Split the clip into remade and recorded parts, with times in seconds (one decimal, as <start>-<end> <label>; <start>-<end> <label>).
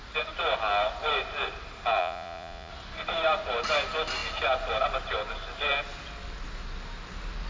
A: 0.0-2.0 recorded; 2.0-2.7 remade; 2.7-7.5 recorded